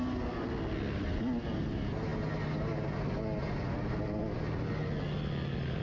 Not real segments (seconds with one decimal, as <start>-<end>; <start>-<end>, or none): none